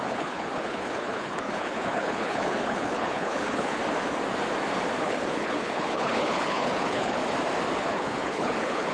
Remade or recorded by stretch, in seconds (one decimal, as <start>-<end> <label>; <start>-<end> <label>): 0.0-3.8 remade; 3.8-5.0 recorded; 5.0-7.2 remade; 7.2-7.8 recorded; 7.8-8.9 remade